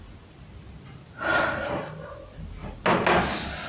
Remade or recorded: recorded